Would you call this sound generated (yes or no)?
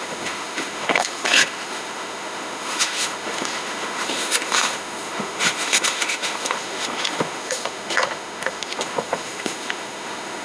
yes